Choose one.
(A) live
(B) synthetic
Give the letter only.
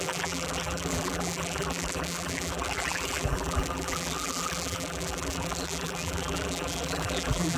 B